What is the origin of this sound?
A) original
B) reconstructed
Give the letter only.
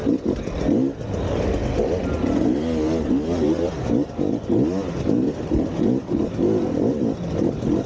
A